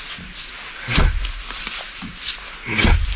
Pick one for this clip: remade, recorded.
recorded